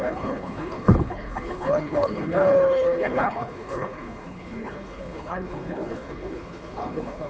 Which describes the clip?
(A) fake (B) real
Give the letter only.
A